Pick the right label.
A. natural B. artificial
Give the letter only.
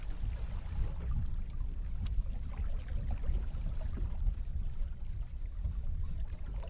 A